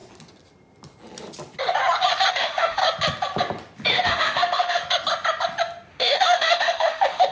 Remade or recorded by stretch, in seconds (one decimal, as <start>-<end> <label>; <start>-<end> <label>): 0.0-2.3 recorded; 2.3-2.8 remade; 2.8-3.9 recorded; 3.9-4.8 remade; 4.8-5.9 recorded; 5.9-7.3 remade